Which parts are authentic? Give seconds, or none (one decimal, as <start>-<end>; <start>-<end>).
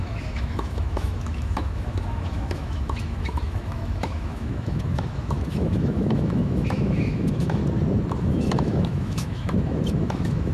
7.6-8.2